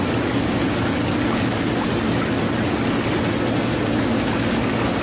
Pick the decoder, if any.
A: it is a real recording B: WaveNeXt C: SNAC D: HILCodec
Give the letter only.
A